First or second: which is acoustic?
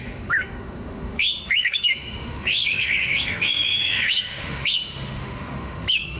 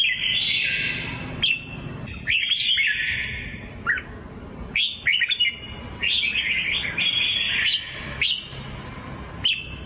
second